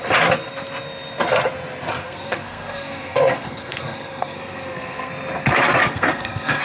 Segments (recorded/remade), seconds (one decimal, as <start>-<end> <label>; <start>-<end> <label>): 0.0-2.0 recorded; 2.0-5.1 remade; 5.1-5.8 recorded; 5.8-6.6 remade